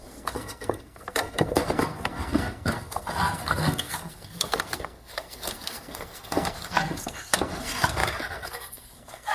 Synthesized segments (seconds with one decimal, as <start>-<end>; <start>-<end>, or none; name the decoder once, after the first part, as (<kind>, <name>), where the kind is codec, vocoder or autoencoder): 0.0-9.3 (codec, SNAC)